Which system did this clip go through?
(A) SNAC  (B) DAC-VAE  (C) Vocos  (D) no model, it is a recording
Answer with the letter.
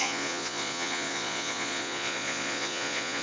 C